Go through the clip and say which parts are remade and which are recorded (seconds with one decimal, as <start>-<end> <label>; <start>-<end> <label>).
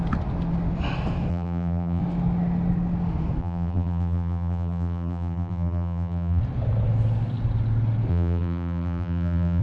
0.0-1.3 recorded; 1.3-2.0 remade; 2.0-3.4 recorded; 3.4-6.4 remade; 6.4-8.1 recorded; 8.1-9.6 remade